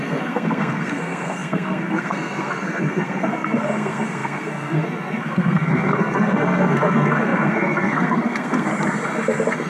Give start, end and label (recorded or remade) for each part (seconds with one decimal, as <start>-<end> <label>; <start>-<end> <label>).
0.0-8.7 remade; 8.7-9.7 recorded

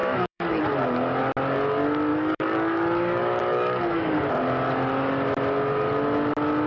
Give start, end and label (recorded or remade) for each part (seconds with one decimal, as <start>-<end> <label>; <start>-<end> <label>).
0.0-0.6 remade; 0.6-2.1 recorded; 2.1-4.3 remade; 4.3-6.7 recorded

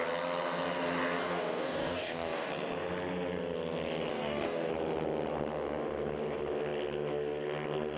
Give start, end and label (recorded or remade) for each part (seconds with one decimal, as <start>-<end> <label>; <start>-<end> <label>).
0.0-1.2 recorded; 1.2-2.5 remade; 2.5-4.1 recorded; 4.1-4.7 remade; 4.7-8.0 recorded

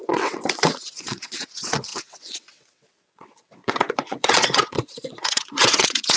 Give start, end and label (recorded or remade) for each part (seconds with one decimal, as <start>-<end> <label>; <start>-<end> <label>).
0.0-6.2 remade

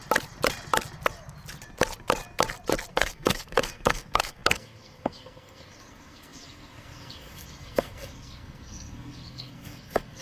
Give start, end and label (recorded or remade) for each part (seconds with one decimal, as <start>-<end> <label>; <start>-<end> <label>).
0.0-2.9 recorded; 2.9-10.2 remade

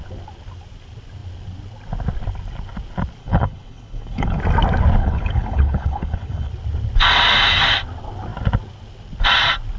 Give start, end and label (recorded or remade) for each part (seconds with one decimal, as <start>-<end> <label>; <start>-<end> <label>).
0.0-3.2 recorded; 3.2-4.4 remade; 4.4-5.0 recorded; 5.0-6.5 remade; 6.5-9.8 recorded